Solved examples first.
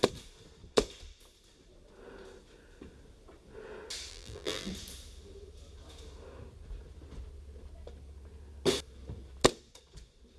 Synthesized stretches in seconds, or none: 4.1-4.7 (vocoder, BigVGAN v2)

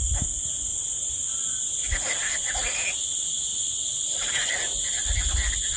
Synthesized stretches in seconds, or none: 0.7-1.7 (vocoder, BigVGAN v2); 3.5-4.3

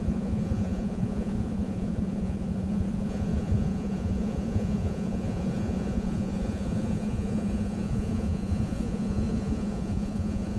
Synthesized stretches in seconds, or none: 0.0-10.6 (vocoder, Vocos)

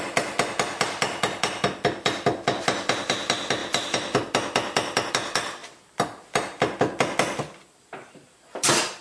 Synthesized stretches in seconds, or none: none

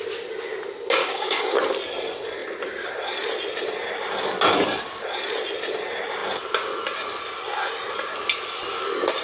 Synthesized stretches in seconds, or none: 1.0-1.6 (codec, DAC)